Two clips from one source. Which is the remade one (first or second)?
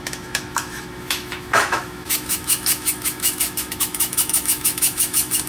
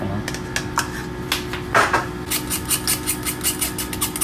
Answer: first